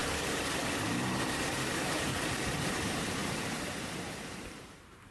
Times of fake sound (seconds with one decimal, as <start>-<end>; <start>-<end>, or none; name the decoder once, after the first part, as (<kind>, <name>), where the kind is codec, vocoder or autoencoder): 1.5-2.1 (vocoder, BigVGAN v2); 2.7-5.1